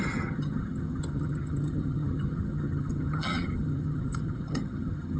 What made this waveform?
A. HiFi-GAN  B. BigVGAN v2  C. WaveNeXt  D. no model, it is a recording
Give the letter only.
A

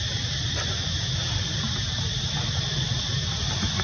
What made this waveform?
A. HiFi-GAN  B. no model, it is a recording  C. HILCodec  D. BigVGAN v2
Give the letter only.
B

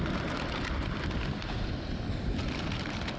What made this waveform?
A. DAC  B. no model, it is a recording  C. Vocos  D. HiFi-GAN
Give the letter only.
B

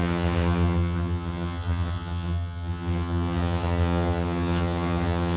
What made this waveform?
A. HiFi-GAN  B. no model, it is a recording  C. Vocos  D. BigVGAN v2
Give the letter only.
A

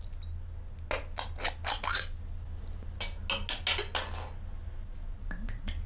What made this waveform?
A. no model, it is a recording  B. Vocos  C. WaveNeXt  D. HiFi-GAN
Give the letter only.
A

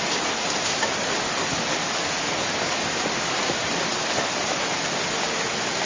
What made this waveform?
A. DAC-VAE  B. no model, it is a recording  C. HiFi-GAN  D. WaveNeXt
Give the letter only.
B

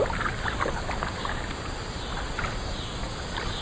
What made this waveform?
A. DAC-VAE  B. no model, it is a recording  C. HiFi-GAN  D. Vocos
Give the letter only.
B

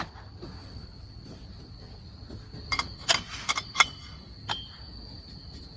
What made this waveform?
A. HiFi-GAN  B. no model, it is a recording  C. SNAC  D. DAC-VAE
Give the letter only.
B